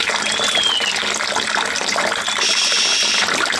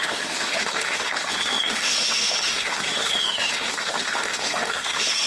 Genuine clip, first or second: first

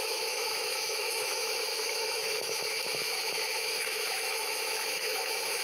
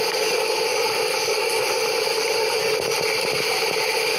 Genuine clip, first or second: second